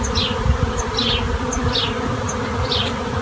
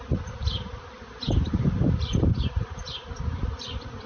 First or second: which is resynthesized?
second